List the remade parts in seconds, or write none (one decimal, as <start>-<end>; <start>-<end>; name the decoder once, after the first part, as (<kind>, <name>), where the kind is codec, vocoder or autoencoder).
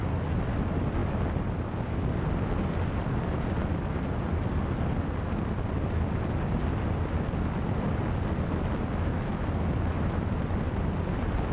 none